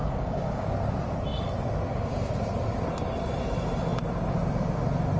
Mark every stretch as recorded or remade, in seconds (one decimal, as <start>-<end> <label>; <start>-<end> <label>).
0.0-0.7 remade; 0.7-5.2 recorded